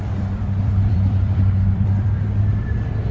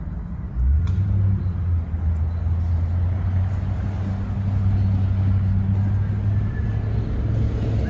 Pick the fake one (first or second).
first